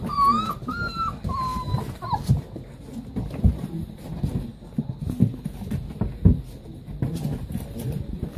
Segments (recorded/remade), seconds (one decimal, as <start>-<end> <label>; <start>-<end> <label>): 0.0-8.4 recorded